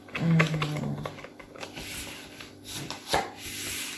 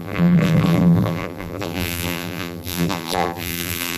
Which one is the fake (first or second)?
second